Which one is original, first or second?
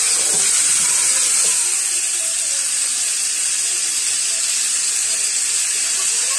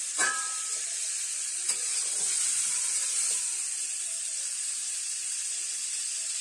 first